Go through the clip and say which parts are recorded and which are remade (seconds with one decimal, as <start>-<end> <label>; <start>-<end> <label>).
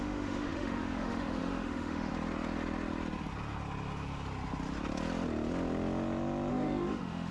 0.0-2.1 remade; 2.1-6.5 recorded; 6.5-7.3 remade